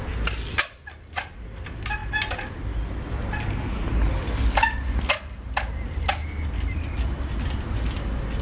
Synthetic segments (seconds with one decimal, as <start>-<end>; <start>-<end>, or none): none